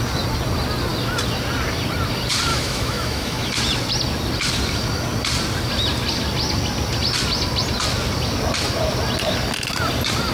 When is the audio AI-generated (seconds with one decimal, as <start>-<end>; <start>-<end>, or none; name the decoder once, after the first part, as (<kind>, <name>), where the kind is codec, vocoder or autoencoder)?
2.5-3.5 (autoencoder, DAC-VAE)